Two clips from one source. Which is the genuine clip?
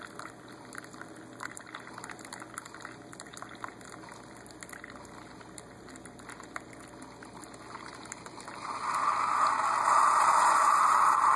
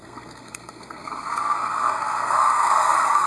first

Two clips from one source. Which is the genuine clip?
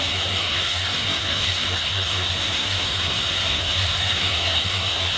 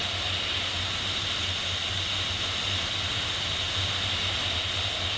second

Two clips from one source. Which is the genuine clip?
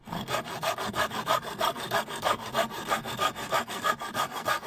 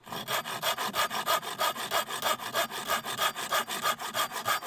second